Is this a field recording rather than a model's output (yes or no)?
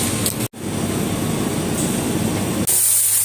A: yes